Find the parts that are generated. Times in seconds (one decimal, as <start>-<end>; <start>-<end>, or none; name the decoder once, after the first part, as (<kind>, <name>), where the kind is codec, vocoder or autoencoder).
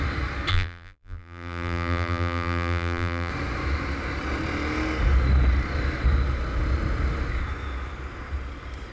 0.5-3.3 (vocoder, BigVGAN v2)